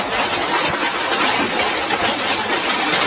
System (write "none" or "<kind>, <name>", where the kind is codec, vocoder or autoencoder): none